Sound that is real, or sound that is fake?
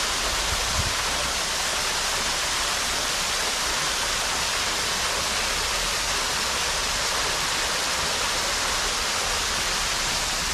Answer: real